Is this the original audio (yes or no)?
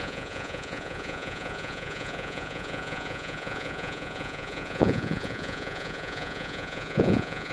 no